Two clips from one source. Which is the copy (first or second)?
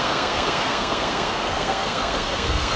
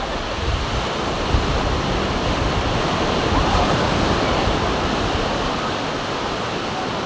first